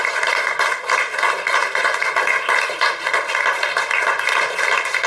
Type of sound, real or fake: real